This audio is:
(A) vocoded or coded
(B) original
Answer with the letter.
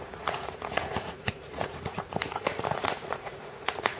A